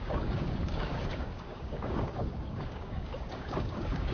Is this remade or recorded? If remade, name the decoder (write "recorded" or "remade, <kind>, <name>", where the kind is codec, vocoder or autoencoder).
remade, codec, DAC